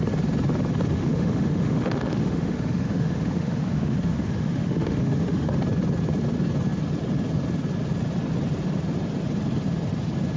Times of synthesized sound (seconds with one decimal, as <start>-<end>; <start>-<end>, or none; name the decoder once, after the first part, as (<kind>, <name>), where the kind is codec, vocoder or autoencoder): 0.9-5.6 (autoencoder, DAC-VAE)